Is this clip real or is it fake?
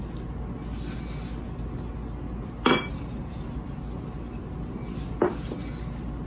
real